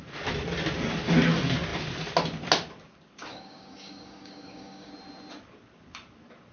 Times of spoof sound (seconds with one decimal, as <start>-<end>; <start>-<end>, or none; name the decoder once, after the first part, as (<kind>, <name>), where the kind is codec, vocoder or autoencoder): 3.3-4.9 (codec, DAC)